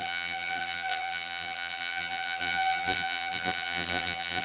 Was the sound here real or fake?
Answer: fake